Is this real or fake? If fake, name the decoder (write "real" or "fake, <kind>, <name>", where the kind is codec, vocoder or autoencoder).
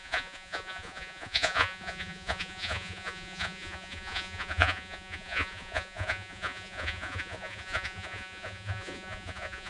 fake, vocoder, Vocos